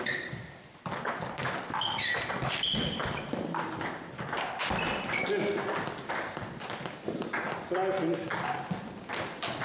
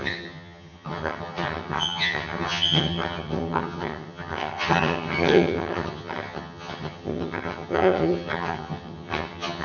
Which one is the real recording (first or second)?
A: first